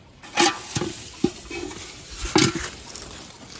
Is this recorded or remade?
recorded